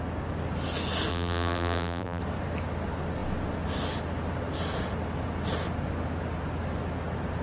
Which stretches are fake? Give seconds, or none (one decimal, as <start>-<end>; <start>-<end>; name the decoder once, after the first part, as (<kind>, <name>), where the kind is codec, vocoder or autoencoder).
1.1-2.2 (vocoder, BigVGAN v2)